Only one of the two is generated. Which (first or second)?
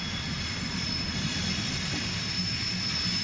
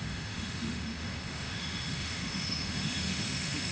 second